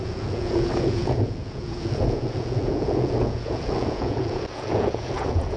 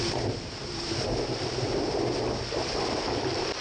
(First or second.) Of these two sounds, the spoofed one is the first